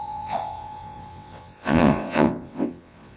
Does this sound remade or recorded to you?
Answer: remade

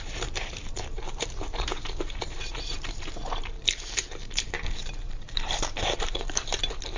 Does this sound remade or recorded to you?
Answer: remade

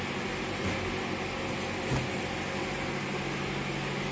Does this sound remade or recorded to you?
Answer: recorded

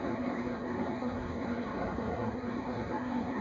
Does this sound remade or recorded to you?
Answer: remade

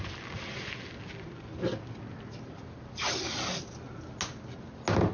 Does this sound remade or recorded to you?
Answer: recorded